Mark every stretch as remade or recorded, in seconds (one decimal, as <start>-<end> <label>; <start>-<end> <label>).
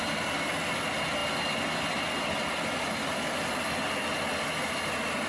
0.0-5.3 recorded